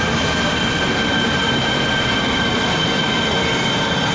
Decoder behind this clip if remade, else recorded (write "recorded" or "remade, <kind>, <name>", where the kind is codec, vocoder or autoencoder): recorded